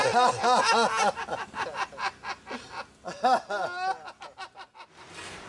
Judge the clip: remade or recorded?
recorded